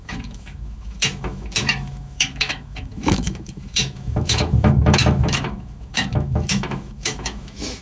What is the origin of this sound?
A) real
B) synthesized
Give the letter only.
B